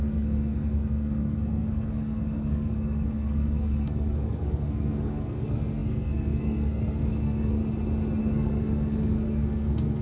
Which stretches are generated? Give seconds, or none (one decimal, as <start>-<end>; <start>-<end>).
0.0-7.6; 8.2-10.0

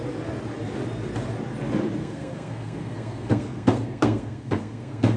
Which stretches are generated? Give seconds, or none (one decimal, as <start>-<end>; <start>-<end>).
2.0-5.2

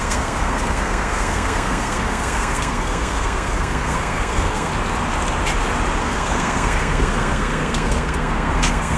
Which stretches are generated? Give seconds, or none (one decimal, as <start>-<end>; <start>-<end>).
0.0-4.7; 6.0-9.0